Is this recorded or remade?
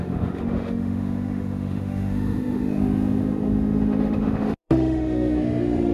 remade